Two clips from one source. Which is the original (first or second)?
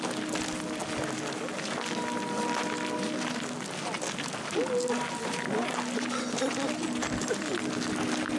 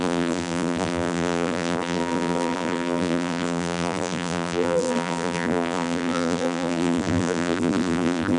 first